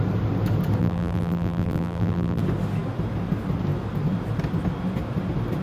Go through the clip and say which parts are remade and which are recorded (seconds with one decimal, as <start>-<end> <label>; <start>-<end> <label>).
0.0-0.8 recorded; 0.8-2.4 remade; 2.4-5.6 recorded